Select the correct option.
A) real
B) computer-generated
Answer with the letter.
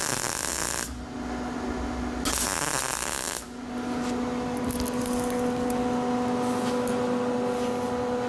A